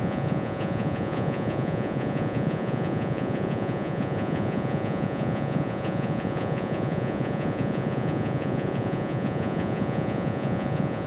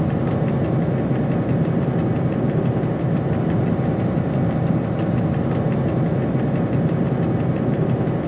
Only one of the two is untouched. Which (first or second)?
second